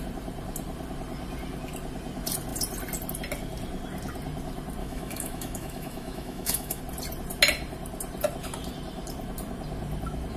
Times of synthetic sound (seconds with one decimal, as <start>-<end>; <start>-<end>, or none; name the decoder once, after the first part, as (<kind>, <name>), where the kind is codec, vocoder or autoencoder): 4.8-6.8 (autoencoder, DAC-VAE)